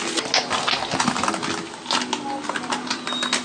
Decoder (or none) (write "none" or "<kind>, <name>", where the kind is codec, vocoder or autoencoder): none